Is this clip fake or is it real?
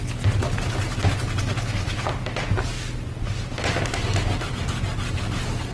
real